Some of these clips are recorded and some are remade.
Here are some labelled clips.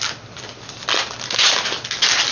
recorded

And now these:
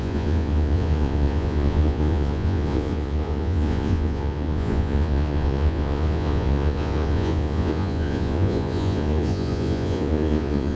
remade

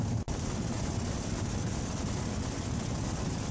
recorded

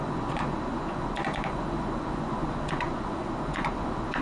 remade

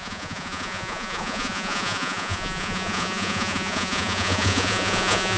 remade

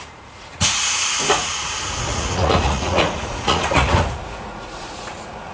remade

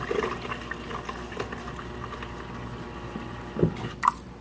recorded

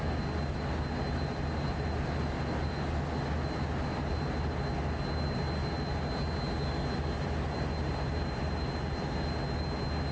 recorded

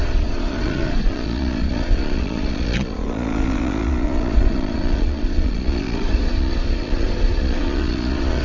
remade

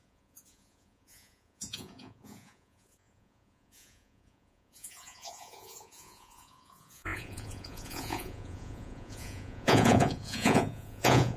remade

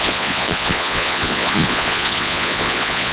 remade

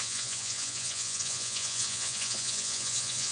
remade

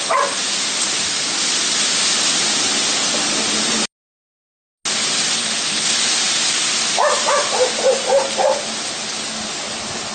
recorded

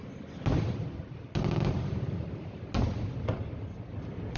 recorded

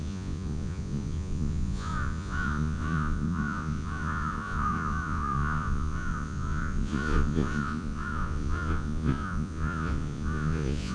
remade